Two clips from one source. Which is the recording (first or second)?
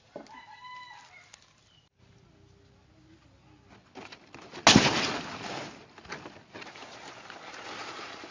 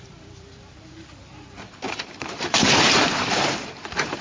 first